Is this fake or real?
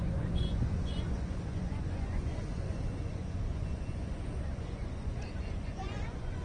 fake